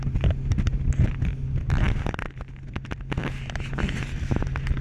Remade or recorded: recorded